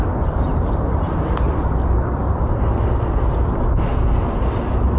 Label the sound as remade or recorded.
recorded